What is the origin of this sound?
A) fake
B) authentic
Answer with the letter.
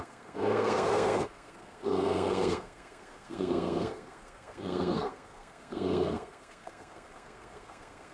A